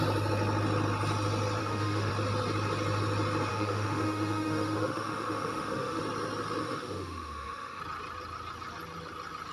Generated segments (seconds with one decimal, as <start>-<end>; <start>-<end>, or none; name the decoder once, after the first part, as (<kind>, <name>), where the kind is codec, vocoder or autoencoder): 1.6-2.1 (autoencoder, DAC-VAE); 3.5-6.0; 6.6-7.8